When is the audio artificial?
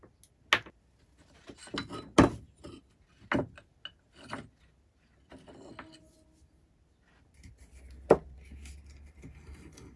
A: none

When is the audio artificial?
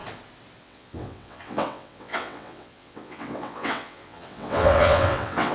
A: 0.6-5.5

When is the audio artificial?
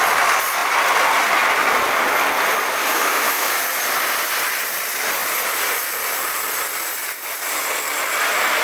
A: 2.8-3.5